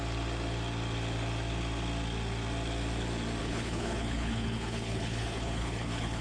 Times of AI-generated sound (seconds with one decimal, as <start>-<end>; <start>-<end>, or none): 3.4-6.2